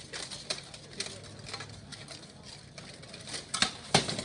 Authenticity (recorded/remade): recorded